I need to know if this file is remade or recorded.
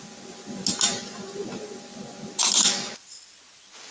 recorded